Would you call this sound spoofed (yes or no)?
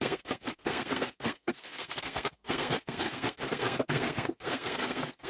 yes